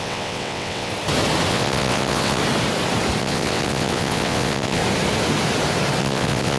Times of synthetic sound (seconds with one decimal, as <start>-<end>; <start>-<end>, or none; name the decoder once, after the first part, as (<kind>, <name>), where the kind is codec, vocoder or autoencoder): 0.0-0.9 (vocoder, WaveNeXt); 1.5-2.4; 3.2-4.8; 6.0-6.6